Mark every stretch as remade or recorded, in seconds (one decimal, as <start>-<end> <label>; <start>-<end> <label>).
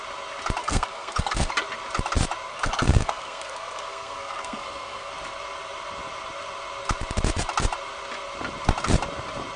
0.0-0.6 recorded; 0.6-1.5 remade; 1.5-2.5 recorded; 2.5-5.1 remade; 5.1-9.6 recorded